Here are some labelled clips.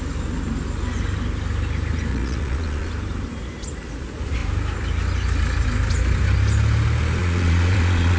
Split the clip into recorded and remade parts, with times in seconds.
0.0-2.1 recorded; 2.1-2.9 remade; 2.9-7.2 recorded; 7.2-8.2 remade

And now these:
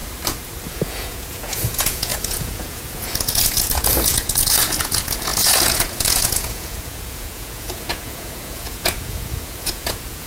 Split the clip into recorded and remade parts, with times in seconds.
0.0-0.7 recorded; 0.7-10.3 remade

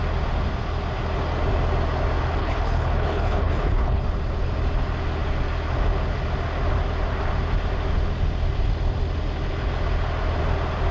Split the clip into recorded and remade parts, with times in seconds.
0.0-2.4 recorded; 2.4-4.0 remade; 4.0-10.9 recorded

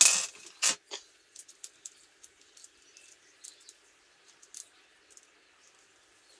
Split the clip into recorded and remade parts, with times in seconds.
0.0-0.9 recorded; 0.9-2.9 remade; 2.9-6.4 recorded